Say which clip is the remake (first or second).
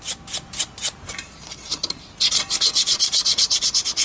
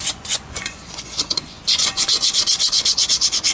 second